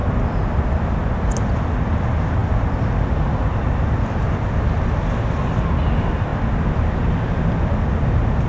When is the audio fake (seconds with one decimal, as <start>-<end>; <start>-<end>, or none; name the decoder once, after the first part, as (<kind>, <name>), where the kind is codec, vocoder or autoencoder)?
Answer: none